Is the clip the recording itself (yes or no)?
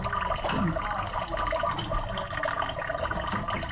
yes